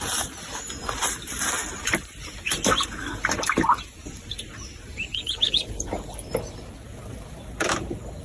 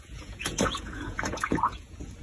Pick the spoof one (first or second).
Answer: second